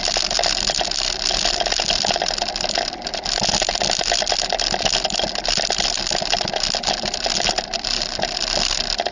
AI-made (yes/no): no